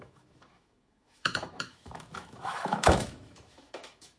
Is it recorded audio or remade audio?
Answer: remade